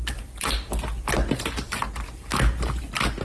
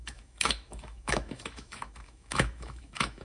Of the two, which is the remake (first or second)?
second